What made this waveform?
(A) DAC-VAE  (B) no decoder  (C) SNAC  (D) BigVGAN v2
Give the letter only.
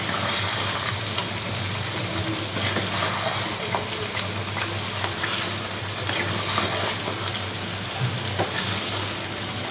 B